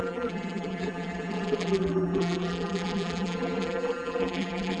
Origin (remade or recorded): remade